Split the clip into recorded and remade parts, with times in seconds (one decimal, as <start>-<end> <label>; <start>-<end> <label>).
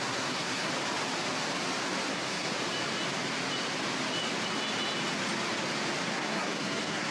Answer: 0.0-0.7 remade; 0.7-2.1 recorded; 2.1-2.5 remade; 2.5-6.1 recorded; 6.1-7.1 remade